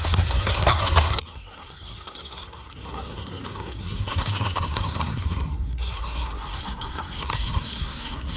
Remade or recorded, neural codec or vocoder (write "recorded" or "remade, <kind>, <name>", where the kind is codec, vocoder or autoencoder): remade, codec, SNAC